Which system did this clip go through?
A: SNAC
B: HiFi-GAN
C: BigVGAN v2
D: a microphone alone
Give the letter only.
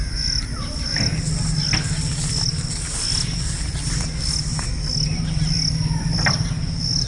D